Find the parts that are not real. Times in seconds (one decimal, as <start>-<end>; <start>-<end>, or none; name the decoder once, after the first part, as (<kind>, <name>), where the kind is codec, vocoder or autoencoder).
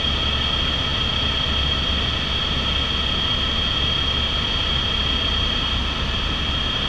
none